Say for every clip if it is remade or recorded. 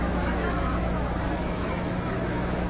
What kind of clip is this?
remade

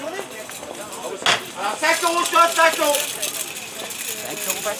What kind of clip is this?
recorded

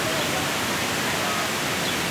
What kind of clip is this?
recorded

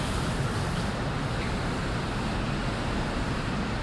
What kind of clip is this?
recorded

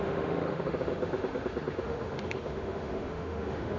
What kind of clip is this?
remade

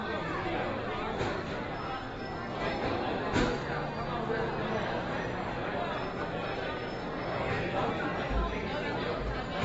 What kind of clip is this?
recorded